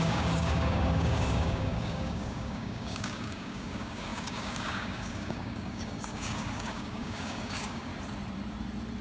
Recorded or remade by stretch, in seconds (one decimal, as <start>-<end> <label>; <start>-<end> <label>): 0.0-7.9 remade; 7.9-9.0 recorded